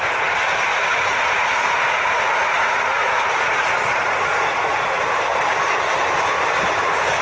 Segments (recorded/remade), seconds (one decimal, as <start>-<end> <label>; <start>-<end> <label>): 0.0-0.7 recorded; 0.7-5.0 remade; 5.0-7.2 recorded